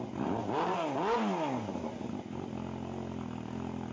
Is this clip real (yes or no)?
yes